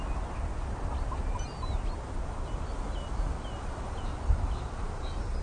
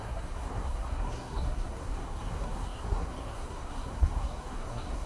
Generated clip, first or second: second